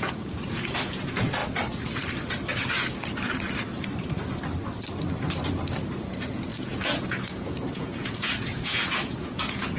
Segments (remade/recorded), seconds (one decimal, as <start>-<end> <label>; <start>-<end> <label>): 0.0-1.4 remade; 1.4-6.0 recorded; 6.0-9.8 remade